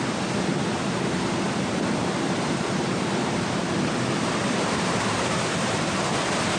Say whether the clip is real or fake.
fake